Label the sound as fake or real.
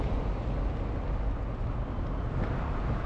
real